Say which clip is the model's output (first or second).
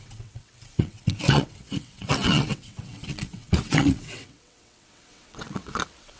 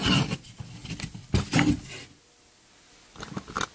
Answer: first